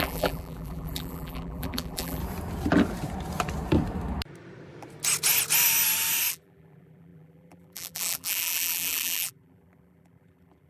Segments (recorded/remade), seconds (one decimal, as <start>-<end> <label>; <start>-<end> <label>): 0.0-2.2 remade; 2.2-6.3 recorded; 6.3-10.7 remade